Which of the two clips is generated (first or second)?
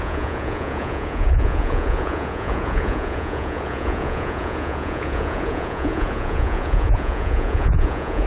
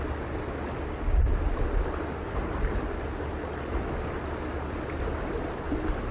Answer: first